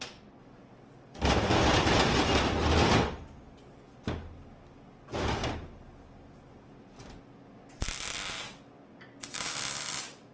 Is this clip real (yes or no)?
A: yes